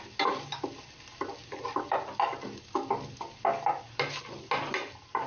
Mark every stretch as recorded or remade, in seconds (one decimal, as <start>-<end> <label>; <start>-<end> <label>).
0.0-5.3 recorded

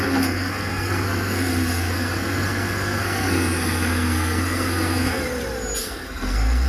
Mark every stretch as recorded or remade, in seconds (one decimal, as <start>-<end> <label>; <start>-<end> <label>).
0.0-5.2 remade; 5.2-5.8 recorded; 5.8-6.7 remade

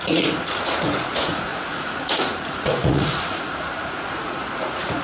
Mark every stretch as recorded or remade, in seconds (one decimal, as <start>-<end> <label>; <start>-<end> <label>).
0.0-5.0 remade